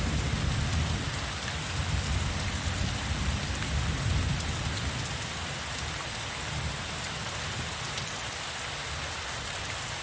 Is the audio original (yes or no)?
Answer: yes